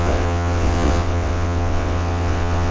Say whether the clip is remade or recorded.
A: remade